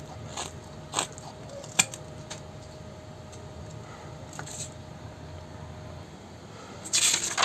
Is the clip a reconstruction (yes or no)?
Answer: no